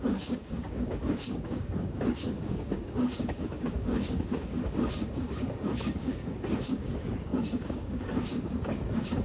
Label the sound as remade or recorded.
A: remade